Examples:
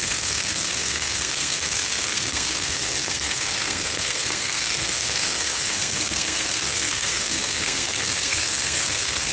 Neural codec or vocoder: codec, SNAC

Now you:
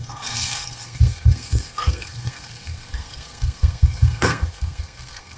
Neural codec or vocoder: codec, SNAC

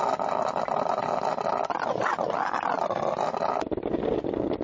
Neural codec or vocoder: vocoder, BigVGAN v2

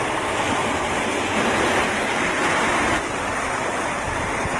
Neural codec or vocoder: none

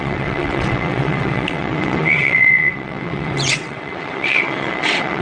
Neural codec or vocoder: vocoder, WaveNeXt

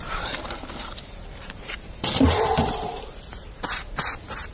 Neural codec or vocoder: vocoder, BigVGAN v2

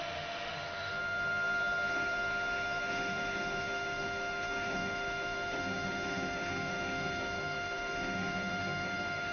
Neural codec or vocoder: autoencoder, DAC-VAE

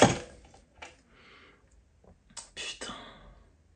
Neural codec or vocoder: none